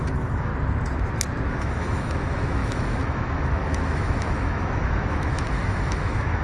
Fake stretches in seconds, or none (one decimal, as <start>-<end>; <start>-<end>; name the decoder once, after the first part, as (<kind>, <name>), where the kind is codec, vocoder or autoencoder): 0.0-0.5 (autoencoder, DAC-VAE); 1.5-6.4